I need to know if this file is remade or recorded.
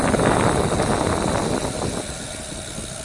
recorded